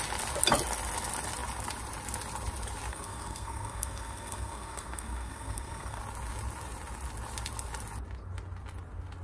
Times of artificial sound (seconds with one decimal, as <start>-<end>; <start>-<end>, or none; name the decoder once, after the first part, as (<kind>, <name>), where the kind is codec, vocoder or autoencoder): 2.9-6.0 (codec, SNAC)